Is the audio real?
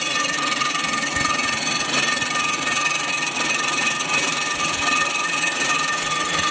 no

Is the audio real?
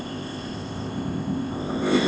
no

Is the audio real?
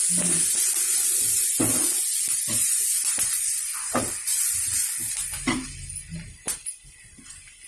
yes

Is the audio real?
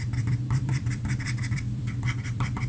no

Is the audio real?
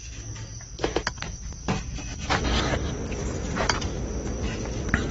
yes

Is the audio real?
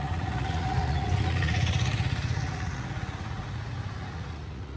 no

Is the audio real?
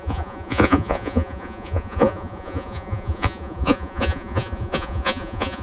no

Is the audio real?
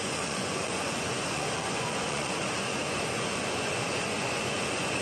no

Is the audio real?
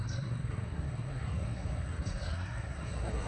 no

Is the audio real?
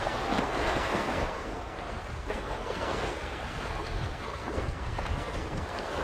no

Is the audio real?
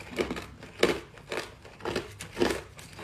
yes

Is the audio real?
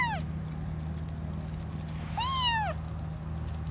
yes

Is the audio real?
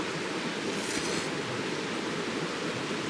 yes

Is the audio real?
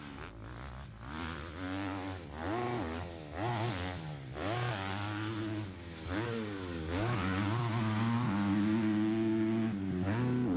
yes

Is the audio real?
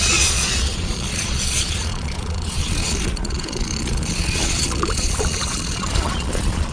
no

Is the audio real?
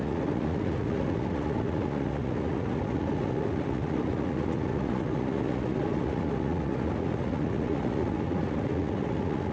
no